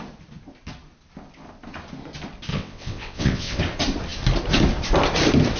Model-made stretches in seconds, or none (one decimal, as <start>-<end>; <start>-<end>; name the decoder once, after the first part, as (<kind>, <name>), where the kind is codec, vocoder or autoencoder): 2.5-3.6 (vocoder, WaveNeXt)